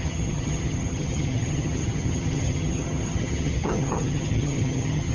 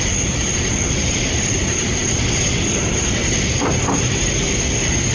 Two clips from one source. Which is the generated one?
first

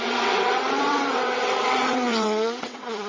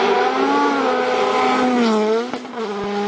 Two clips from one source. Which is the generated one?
first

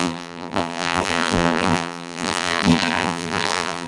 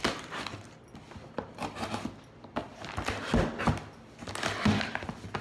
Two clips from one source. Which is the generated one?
first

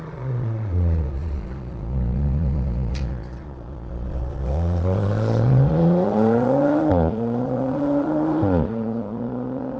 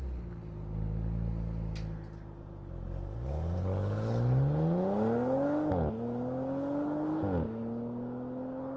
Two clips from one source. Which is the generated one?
first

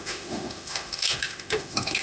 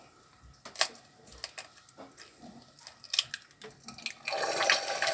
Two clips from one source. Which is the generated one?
first